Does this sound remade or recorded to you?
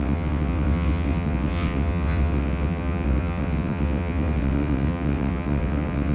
remade